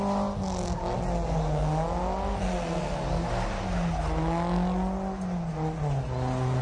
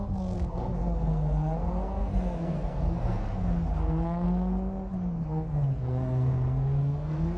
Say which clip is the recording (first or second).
first